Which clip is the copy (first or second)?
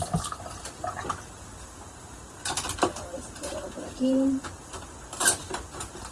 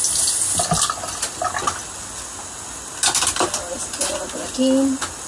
first